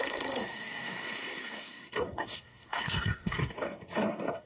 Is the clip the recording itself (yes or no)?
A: no